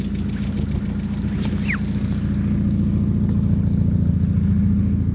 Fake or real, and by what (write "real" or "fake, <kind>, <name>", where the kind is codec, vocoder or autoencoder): real